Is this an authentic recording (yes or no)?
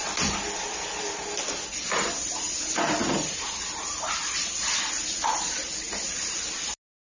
yes